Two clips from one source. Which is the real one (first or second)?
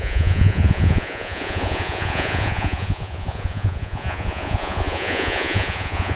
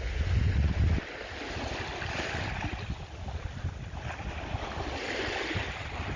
second